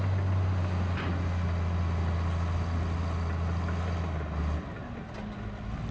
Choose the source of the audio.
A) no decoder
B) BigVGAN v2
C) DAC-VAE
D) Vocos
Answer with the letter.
A